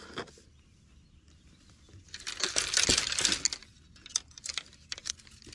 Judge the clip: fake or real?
real